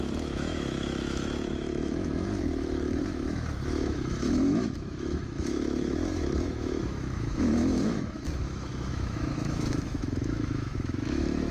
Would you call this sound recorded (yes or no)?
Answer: no